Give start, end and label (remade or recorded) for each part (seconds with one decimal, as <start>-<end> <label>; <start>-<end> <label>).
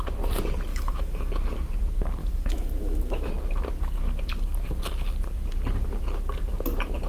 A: 0.0-0.7 recorded; 0.7-1.3 remade; 1.3-2.2 recorded; 2.2-3.3 remade; 3.3-7.1 recorded